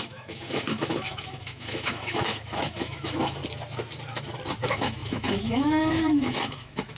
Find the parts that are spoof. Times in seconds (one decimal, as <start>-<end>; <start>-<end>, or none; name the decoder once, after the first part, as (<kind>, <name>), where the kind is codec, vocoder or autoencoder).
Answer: 0.0-3.4 (autoencoder, DAC-VAE); 4.6-7.0